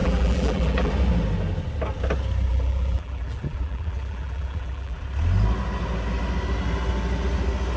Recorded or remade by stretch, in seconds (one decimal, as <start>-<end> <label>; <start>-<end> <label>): 0.0-0.9 remade; 0.9-2.5 recorded; 2.5-5.0 remade; 5.0-7.8 recorded